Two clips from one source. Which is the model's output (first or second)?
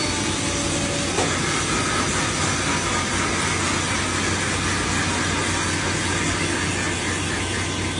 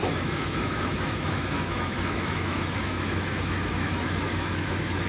second